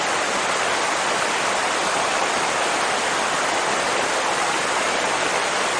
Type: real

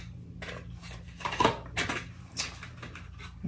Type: real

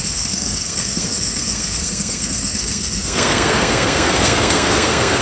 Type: fake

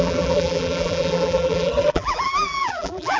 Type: fake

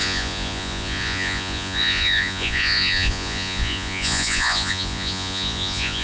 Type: fake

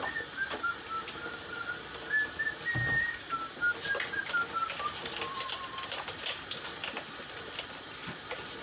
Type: real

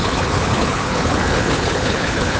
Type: fake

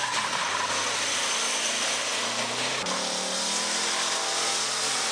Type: real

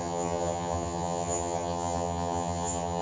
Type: fake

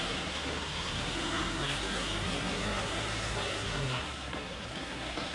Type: fake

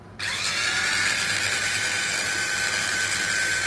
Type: fake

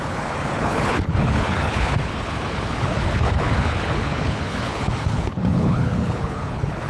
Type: fake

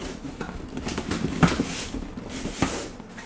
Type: real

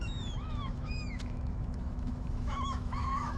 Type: fake